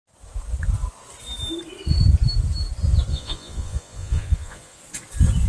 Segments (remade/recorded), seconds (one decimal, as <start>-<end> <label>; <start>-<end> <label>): 0.0-3.1 recorded; 3.1-4.8 remade; 4.8-5.5 recorded